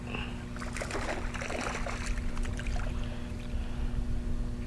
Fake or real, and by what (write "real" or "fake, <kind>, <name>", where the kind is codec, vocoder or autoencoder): real